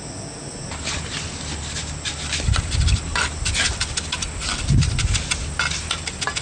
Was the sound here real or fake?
real